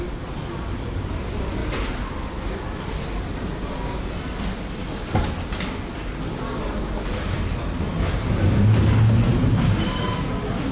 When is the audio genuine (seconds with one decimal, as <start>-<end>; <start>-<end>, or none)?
0.0-4.8; 5.3-10.7